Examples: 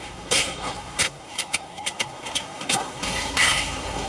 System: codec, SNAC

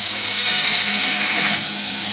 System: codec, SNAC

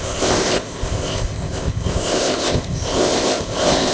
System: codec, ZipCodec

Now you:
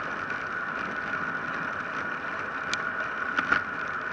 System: none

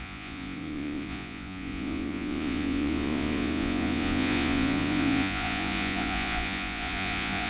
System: vocoder, Vocos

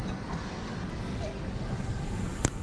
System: none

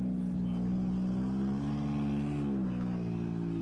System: none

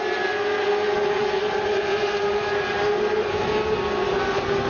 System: none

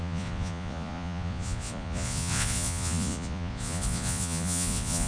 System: vocoder, Vocos